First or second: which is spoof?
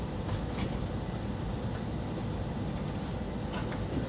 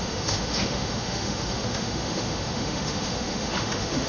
second